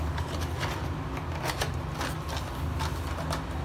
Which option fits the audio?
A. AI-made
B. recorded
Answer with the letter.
B